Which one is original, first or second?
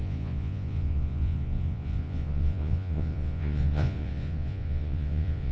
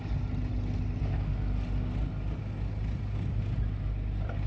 second